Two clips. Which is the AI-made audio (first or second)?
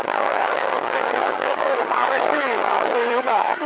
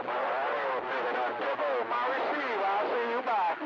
first